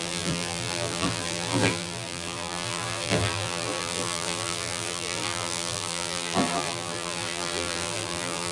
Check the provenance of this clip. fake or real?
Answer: fake